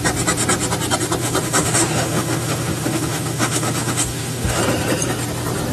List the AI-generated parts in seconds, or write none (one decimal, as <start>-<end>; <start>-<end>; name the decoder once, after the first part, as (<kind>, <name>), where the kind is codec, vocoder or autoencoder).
1.2-4.6 (autoencoder, DAC-VAE)